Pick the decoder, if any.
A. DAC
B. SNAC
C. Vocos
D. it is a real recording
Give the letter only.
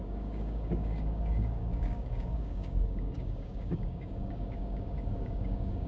A